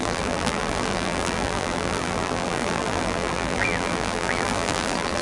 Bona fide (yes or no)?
no